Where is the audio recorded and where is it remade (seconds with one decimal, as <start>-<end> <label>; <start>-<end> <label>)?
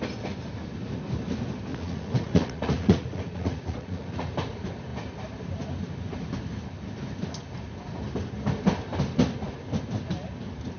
0.0-1.7 recorded; 1.7-4.3 remade; 4.3-10.8 recorded